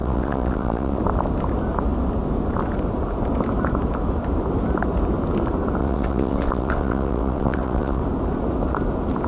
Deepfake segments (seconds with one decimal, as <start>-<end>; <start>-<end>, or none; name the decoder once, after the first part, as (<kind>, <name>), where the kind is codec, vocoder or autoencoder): 0.0-1.0 (vocoder, WaveNeXt); 5.8-8.0

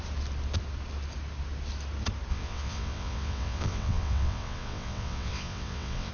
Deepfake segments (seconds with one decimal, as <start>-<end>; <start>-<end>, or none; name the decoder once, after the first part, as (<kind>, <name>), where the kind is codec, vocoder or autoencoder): 2.3-6.1 (vocoder, WaveNeXt)